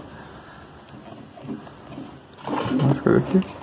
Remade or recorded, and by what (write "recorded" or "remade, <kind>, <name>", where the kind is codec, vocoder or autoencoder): recorded